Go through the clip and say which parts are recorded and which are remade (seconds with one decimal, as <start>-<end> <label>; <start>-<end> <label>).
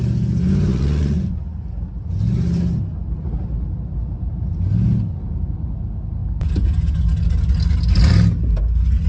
0.0-0.7 recorded; 0.7-1.5 remade; 1.5-9.1 recorded